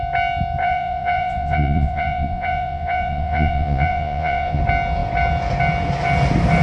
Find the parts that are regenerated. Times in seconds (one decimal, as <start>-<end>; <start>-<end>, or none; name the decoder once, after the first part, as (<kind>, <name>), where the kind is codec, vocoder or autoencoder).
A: 0.6-4.6 (vocoder, Vocos)